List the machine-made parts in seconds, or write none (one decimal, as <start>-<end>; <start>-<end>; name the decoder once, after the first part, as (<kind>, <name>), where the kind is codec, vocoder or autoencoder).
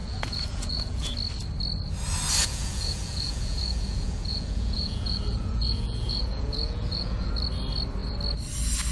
0.0-1.1 (vocoder, Vocos); 2.4-7.3